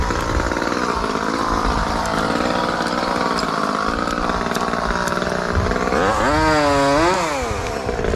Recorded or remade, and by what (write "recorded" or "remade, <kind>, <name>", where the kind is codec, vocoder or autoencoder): recorded